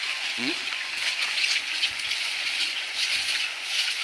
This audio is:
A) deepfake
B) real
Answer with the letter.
A